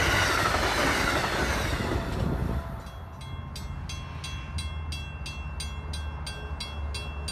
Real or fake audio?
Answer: real